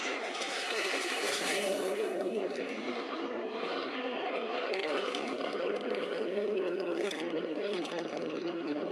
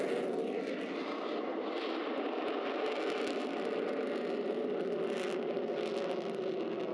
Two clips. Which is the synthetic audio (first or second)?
first